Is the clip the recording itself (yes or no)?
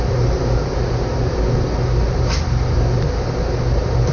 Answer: yes